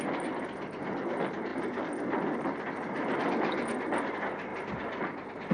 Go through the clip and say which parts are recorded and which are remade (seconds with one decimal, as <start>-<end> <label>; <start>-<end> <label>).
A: 0.0-5.5 recorded